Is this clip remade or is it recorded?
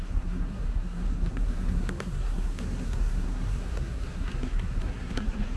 remade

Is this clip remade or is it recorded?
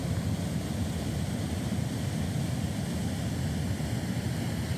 recorded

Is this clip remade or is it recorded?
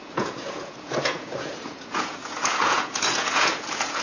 remade